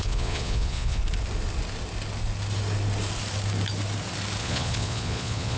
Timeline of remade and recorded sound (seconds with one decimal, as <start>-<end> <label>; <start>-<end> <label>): 0.0-1.0 remade; 1.0-4.4 recorded; 4.4-5.6 remade